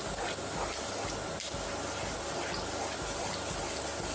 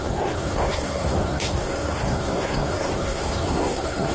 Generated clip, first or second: second